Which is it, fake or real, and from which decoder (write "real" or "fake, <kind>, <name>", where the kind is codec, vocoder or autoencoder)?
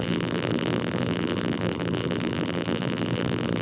fake, vocoder, BigVGAN v2